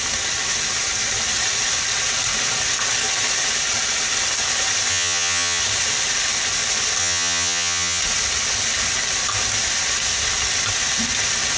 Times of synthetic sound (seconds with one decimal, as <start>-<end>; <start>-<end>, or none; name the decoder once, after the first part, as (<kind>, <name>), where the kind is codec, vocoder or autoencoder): 4.9-5.6 (vocoder, HiFi-GAN); 7.0-8.0

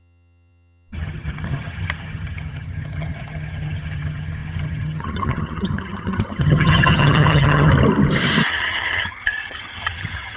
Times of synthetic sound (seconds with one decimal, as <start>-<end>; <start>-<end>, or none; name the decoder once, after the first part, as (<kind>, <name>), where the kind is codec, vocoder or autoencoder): 0.0-7.7 (vocoder, HiFi-GAN); 8.5-10.4

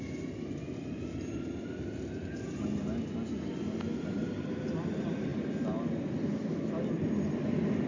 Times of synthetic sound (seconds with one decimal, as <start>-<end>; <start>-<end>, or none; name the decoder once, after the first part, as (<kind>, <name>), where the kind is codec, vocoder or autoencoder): none

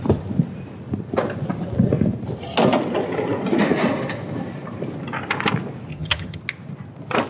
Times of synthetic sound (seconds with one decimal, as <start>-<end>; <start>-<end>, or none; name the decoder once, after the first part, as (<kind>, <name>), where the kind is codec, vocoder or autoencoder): 5.9-6.4 (vocoder, HiFi-GAN)

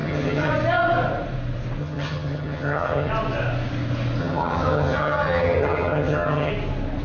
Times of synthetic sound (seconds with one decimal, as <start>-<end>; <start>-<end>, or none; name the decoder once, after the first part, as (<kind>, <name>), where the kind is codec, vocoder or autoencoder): 0.0-0.5 (vocoder, HiFi-GAN); 1.8-3.1; 4.2-6.5

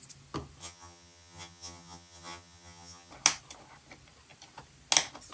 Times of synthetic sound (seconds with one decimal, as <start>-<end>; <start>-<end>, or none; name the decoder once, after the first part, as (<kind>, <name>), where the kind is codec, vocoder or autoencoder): 0.6-3.1 (vocoder, HiFi-GAN)

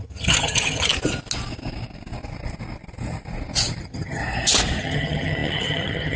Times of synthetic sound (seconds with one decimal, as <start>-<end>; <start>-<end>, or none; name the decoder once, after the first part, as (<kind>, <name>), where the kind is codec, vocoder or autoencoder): 0.0-0.9 (vocoder, HiFi-GAN); 3.8-4.2; 4.8-6.2

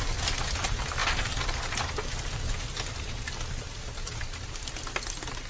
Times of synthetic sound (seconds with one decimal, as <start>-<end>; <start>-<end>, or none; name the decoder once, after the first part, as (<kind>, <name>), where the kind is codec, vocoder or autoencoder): none